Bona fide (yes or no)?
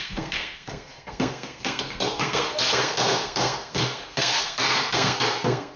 no